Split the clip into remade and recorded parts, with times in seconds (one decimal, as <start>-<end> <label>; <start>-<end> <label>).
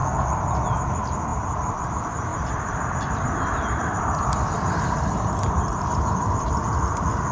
0.0-2.3 recorded; 2.3-6.7 remade; 6.7-7.3 recorded